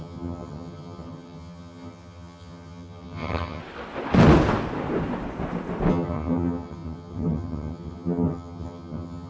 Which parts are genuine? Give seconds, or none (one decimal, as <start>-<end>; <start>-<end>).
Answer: 3.6-5.9